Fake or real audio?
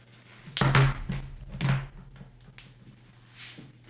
real